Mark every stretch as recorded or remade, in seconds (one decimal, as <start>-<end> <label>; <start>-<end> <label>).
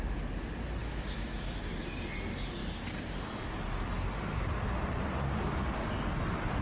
0.0-0.8 recorded; 0.8-1.6 remade; 1.6-6.6 recorded